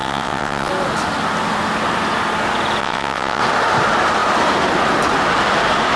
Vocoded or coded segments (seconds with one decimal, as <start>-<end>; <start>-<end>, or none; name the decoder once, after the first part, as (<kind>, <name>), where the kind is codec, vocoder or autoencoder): 0.0-0.7 (vocoder, WaveNeXt); 2.8-3.4